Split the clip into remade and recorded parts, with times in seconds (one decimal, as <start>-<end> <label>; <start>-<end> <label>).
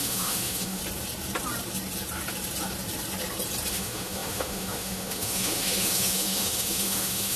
0.0-0.8 remade; 0.8-3.7 recorded; 3.7-7.4 remade